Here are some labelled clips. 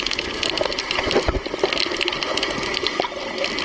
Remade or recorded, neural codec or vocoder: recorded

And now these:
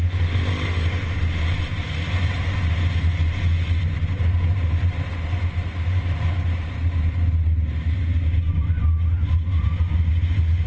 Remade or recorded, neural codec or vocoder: recorded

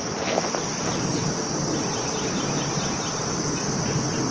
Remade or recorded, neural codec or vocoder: recorded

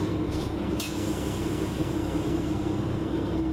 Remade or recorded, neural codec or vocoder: remade, codec, SNAC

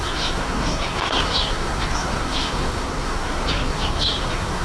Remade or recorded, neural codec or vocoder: remade, codec, SNAC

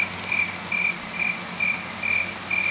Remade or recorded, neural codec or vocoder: recorded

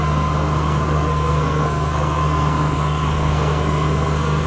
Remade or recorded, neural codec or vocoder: remade, codec, SNAC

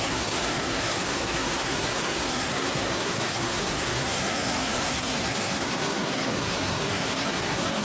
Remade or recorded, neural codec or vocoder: remade, codec, SNAC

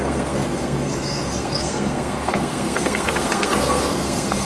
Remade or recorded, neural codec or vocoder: remade, codec, SNAC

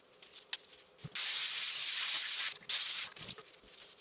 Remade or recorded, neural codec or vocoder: recorded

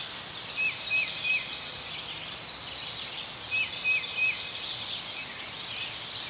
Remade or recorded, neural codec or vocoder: recorded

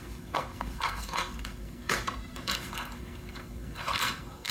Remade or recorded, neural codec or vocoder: remade, codec, SNAC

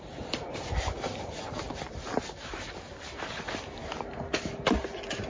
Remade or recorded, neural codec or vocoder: recorded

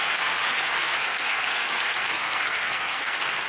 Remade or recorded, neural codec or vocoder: remade, codec, SNAC